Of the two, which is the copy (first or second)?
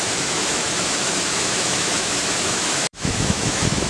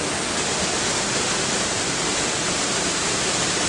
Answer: first